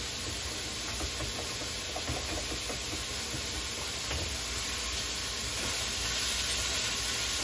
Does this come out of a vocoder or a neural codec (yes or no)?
no